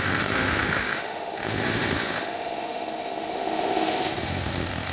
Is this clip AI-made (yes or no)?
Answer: yes